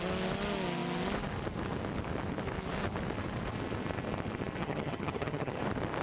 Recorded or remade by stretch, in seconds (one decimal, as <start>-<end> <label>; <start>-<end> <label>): 0.0-4.6 recorded; 4.6-5.6 remade; 5.6-6.0 recorded